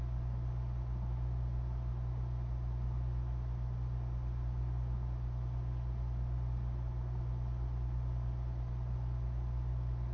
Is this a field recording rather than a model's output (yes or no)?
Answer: yes